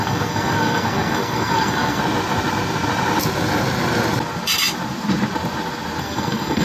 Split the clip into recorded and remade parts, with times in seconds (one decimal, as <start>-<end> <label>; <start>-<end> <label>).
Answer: 0.0-2.0 remade; 2.0-6.0 recorded; 6.0-6.6 remade